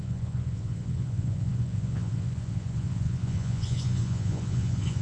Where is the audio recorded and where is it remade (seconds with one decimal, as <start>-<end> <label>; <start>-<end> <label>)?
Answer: 0.0-5.0 remade